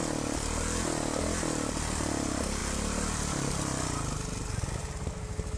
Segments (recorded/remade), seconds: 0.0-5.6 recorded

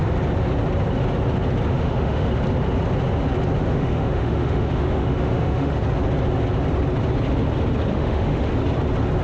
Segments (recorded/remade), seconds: 0.0-1.7 recorded; 1.7-2.3 remade; 2.3-3.6 recorded; 3.6-5.8 remade; 5.8-7.9 recorded; 7.9-8.5 remade; 8.5-9.2 recorded

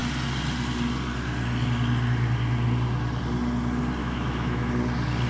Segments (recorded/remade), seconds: 0.0-4.0 recorded; 4.0-4.7 remade; 4.7-5.3 recorded

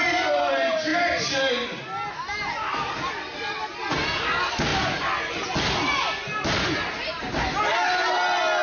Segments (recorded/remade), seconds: 0.0-8.6 recorded

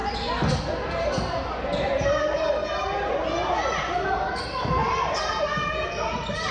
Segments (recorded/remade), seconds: 0.0-6.5 recorded

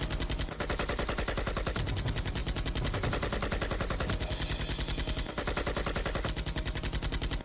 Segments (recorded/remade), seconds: 0.0-7.4 recorded

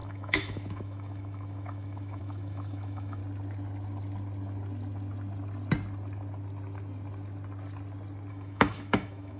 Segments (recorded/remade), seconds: 0.0-3.2 remade; 3.2-8.3 recorded; 8.3-9.4 remade